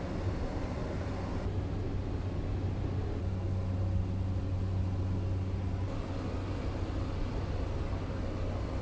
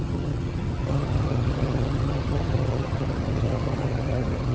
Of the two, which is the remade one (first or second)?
second